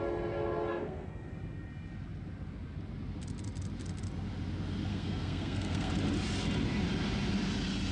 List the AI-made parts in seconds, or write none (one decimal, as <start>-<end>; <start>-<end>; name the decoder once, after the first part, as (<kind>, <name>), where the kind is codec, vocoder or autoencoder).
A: 0.7-1.3 (codec, SNAC); 4.9-5.9